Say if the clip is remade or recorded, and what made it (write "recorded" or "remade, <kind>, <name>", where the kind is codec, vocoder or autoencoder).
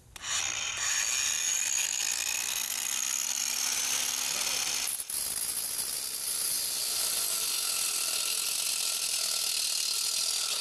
recorded